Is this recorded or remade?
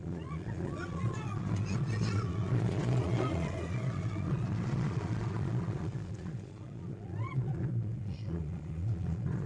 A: remade